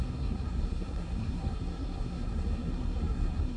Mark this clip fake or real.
fake